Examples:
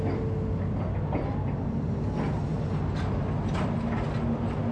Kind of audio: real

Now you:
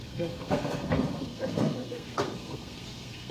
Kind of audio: fake